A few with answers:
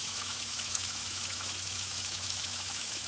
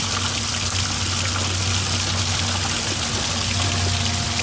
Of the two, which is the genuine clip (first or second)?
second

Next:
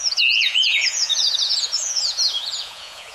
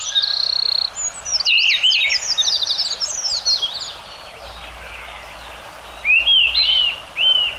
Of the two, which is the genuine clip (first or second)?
second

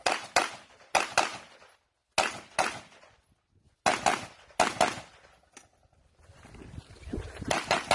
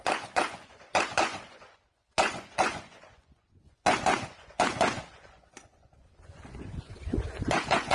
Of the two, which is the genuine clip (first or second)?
first